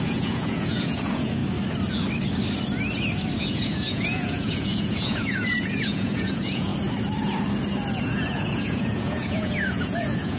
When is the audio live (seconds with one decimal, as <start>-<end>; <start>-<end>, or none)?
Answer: 1.4-3.5; 6.7-8.0